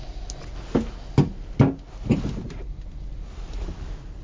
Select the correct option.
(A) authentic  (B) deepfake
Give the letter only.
A